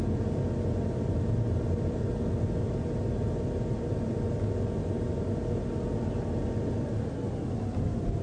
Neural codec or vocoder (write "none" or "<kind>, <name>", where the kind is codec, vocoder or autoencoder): none